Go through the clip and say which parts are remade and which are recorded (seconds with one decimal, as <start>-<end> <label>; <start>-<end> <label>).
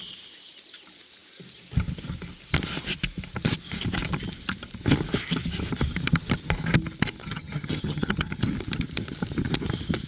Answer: 0.0-7.2 recorded; 7.2-8.4 remade; 8.4-10.1 recorded